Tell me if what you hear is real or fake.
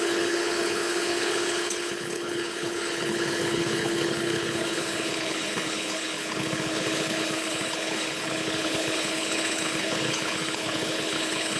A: fake